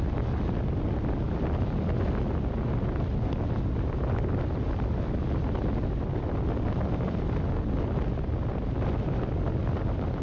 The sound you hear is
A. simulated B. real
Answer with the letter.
B